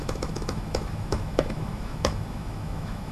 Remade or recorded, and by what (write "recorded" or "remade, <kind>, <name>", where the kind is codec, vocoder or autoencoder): remade, autoencoder, DAC-VAE